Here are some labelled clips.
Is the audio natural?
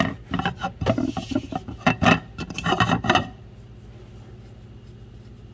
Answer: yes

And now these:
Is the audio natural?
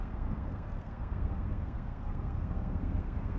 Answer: no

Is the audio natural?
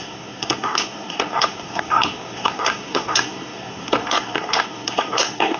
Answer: no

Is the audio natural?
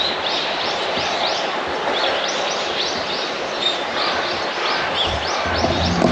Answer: yes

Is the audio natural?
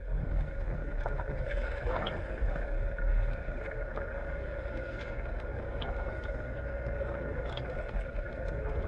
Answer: no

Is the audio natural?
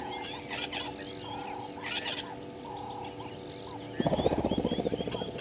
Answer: yes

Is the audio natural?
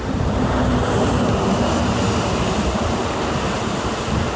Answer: yes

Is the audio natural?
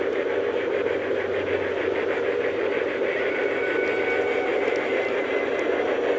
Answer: yes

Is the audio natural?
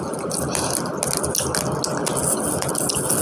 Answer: yes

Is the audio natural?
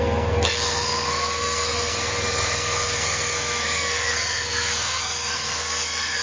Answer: no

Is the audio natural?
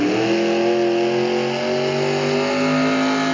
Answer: yes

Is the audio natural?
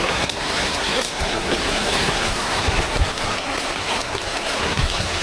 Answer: no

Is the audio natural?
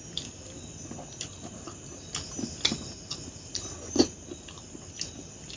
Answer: yes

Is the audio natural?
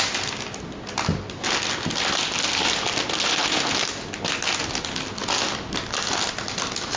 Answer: yes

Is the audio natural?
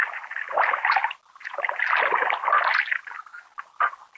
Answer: yes